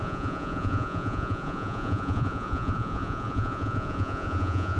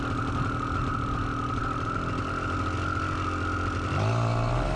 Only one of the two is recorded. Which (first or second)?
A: second